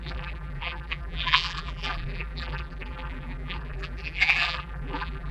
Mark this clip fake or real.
fake